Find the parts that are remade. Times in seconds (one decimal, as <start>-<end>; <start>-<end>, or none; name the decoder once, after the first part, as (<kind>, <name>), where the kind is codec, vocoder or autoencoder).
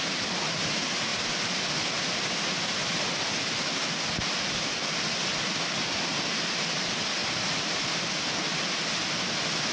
none